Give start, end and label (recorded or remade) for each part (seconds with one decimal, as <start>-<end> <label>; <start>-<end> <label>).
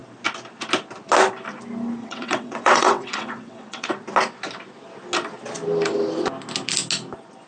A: 0.0-2.0 recorded; 2.0-3.9 remade; 3.9-7.5 recorded